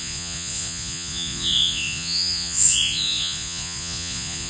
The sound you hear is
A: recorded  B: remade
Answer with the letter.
B